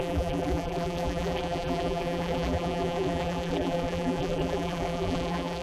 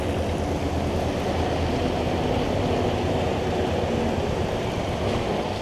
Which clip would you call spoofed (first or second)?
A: first